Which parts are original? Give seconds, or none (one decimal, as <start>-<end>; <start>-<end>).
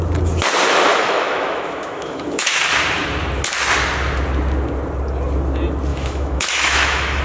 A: 0.0-0.9; 2.6-5.9